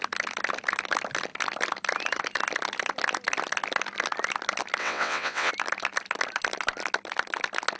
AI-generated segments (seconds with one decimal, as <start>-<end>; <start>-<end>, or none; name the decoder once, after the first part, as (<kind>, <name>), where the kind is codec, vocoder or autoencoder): 4.8-5.5 (vocoder, WaveNeXt)